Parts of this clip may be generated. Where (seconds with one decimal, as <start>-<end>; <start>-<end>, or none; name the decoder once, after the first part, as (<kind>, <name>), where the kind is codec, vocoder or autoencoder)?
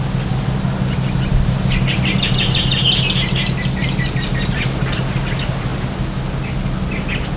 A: none